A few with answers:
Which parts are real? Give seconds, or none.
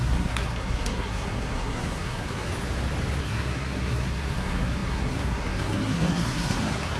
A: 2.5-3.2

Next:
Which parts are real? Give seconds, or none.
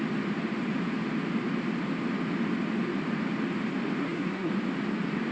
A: 0.0-4.0; 4.5-5.3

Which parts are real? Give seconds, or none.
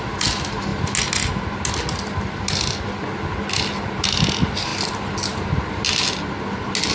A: 0.0-6.9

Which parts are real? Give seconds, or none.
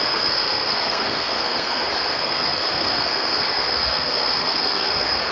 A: none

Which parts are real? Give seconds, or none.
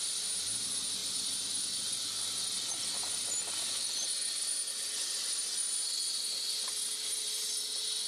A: 0.0-8.1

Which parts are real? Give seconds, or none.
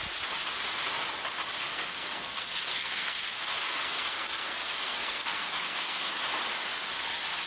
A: 0.0-1.7; 6.2-7.5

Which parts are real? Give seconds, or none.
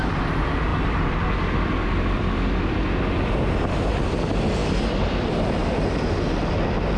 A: 0.0-7.0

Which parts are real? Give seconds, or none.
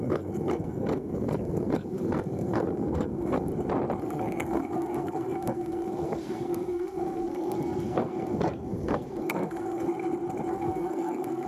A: 3.5-4.0; 9.9-10.5